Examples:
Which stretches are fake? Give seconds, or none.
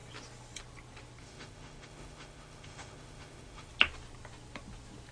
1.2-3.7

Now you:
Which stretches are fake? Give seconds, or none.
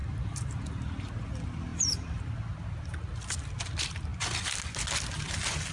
0.0-0.7; 1.7-2.3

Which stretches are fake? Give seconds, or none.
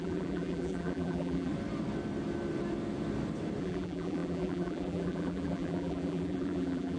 0.0-1.5; 3.6-7.0